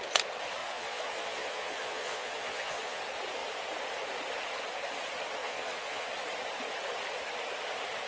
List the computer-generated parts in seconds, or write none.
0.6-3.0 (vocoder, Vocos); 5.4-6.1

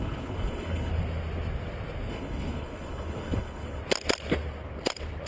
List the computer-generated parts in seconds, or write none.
0.0-0.9 (codec, HILCodec); 2.1-3.8

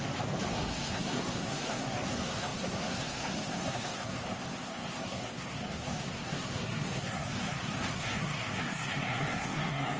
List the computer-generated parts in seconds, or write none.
0.5-10.0 (codec, SNAC)

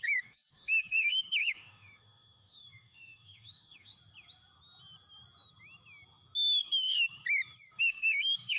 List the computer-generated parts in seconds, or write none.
0.0-3.9 (autoencoder, DAC-VAE); 6.6-7.2; 7.8-8.6

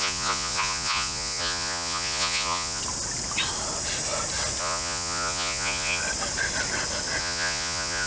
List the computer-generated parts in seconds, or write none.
0.0-2.8 (vocoder, Vocos); 4.6-6.0; 7.2-8.1

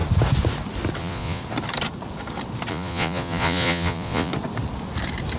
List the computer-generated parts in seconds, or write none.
1.0-1.4 (vocoder, Vocos); 2.7-4.3

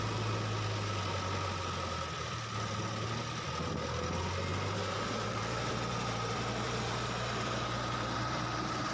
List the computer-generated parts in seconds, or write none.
4.5-8.9 (vocoder, BigVGAN v2)